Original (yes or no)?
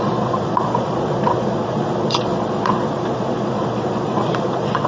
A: no